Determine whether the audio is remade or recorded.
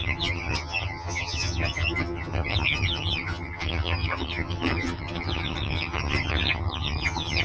remade